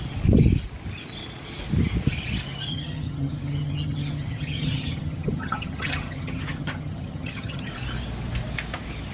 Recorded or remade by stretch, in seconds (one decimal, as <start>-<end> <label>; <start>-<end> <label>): 0.0-2.7 recorded; 2.7-7.7 remade; 7.7-9.1 recorded